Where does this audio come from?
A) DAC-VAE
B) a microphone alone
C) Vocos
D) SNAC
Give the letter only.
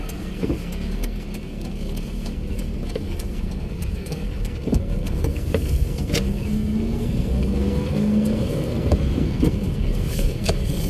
D